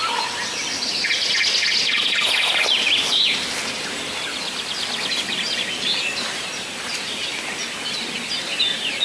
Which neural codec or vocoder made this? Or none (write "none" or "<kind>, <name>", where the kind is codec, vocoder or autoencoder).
none